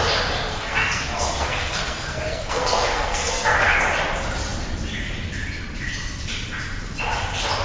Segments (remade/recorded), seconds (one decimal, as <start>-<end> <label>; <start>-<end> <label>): 0.0-0.5 recorded; 0.5-3.8 remade; 3.8-7.6 recorded